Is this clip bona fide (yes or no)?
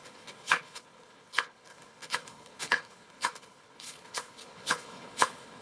no